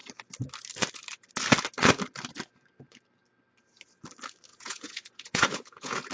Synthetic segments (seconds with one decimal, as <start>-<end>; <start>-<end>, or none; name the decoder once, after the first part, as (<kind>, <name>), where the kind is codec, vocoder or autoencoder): 4.5-6.1 (vocoder, Vocos)